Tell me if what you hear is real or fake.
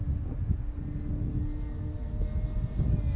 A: real